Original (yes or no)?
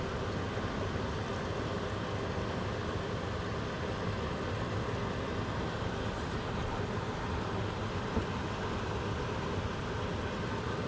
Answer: yes